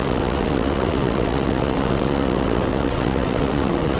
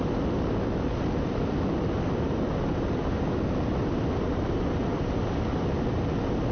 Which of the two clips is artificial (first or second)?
first